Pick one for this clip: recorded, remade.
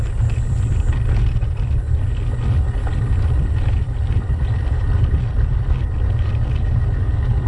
recorded